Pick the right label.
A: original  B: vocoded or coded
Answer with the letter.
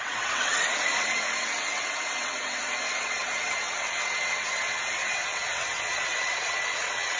B